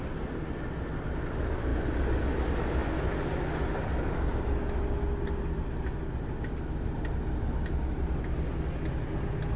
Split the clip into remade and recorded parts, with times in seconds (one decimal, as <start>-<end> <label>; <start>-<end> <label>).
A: 0.0-9.6 recorded